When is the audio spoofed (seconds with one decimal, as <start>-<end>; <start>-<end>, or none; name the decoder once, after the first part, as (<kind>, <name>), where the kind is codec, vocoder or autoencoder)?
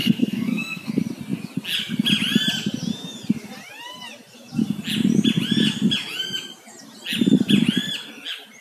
0.0-0.9 (codec, SNAC)